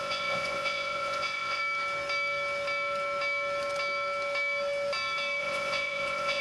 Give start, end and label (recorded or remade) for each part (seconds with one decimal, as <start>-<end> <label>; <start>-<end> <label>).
0.0-1.6 remade; 1.6-5.4 recorded; 5.4-6.4 remade